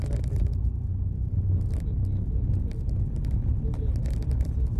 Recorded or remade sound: recorded